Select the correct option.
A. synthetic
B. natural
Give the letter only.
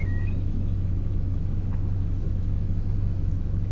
A